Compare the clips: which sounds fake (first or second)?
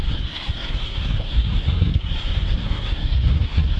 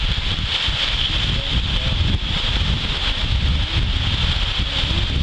first